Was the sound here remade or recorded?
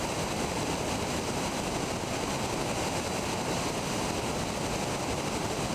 recorded